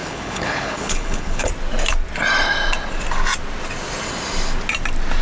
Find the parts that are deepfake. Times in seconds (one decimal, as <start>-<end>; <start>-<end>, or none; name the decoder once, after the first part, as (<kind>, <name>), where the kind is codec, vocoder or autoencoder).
0.0-1.5 (codec, HILCodec)